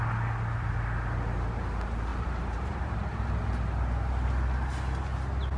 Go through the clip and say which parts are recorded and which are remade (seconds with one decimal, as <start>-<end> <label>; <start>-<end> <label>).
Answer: 0.0-2.1 recorded; 2.1-3.3 remade; 3.3-5.6 recorded